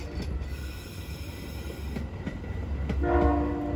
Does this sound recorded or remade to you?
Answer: recorded